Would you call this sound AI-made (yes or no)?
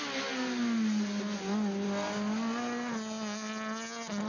no